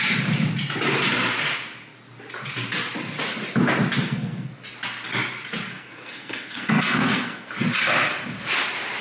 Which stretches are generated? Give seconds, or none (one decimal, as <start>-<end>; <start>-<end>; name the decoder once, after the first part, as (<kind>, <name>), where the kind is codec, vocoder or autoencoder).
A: 4.0-4.5 (codec, SNAC); 5.7-7.5